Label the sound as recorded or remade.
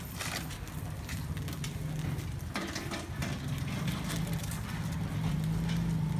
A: recorded